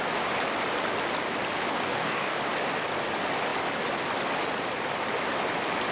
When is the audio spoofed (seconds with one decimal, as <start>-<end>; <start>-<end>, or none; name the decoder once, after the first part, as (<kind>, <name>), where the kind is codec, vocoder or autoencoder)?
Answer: 1.7-2.4 (codec, DAC)